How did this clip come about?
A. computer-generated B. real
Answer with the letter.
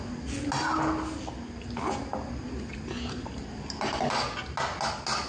B